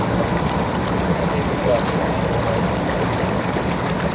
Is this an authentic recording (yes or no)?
yes